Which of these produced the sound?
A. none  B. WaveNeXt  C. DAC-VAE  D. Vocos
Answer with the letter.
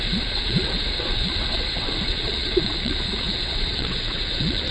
B